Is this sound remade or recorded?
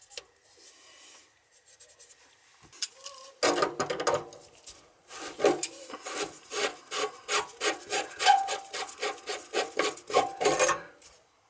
recorded